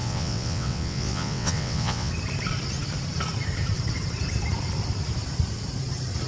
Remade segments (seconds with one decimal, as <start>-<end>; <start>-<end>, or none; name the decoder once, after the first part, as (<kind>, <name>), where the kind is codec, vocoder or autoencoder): 0.0-2.1 (vocoder, WaveNeXt)